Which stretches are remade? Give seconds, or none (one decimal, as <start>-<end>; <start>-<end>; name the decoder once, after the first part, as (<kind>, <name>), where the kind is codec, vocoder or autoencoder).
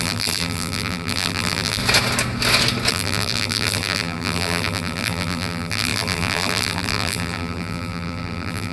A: 0.0-1.8 (vocoder, BigVGAN v2); 2.9-8.7